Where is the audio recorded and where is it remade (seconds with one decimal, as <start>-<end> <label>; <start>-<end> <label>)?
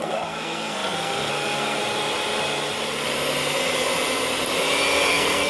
0.0-1.8 remade; 1.8-5.1 recorded; 5.1-5.5 remade